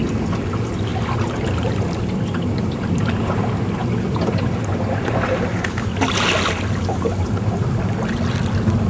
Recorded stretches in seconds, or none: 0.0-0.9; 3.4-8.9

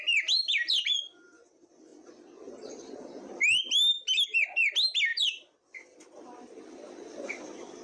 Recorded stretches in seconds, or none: 0.0-5.1; 6.9-7.8

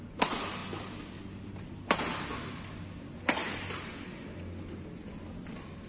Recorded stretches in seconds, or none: 0.0-5.9